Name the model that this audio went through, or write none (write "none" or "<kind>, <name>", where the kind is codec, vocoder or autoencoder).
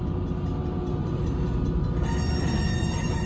none